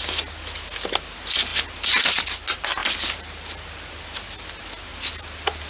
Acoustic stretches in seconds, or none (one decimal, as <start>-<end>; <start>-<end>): 0.0-5.7